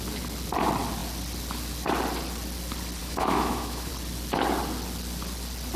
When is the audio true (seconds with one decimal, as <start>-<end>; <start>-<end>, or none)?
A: 0.0-3.0; 3.9-5.8